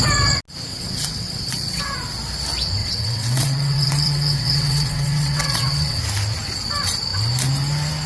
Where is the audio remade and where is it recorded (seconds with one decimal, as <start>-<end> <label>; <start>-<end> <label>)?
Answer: 0.0-0.7 recorded; 0.7-1.8 remade; 1.8-2.8 recorded; 2.8-6.0 remade; 6.0-8.1 recorded